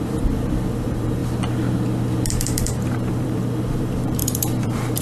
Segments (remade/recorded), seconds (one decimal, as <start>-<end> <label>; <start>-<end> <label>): 0.0-1.2 remade; 1.2-2.3 recorded; 2.3-5.0 remade